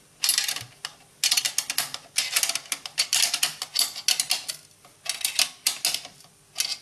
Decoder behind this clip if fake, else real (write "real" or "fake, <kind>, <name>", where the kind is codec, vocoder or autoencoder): real